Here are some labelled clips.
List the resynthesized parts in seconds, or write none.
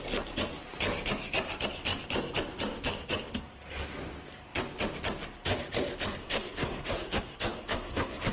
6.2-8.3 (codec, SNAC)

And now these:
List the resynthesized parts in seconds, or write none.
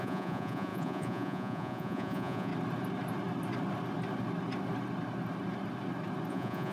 0.0-2.5 (vocoder, Vocos); 6.3-6.7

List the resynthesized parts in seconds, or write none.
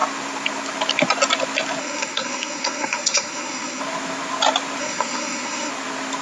1.8-3.8 (codec, SNAC); 4.8-5.7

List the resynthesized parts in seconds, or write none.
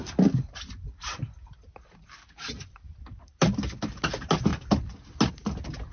none